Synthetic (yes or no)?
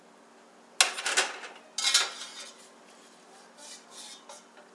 no